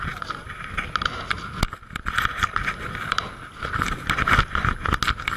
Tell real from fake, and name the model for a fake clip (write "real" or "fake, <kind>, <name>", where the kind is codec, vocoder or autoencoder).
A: real